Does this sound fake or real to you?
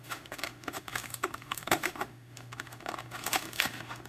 fake